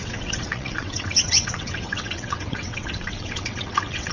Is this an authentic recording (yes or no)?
no